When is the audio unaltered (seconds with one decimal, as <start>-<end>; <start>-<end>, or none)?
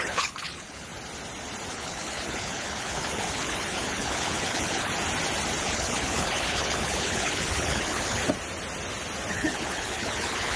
0.9-1.7; 4.9-5.6; 8.2-9.3